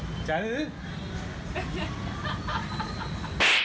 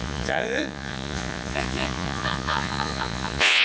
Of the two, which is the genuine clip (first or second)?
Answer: first